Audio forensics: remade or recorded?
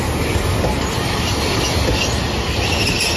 recorded